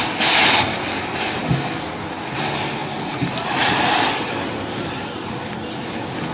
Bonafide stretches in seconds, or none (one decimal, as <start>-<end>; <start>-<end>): 0.0-2.8; 5.5-6.3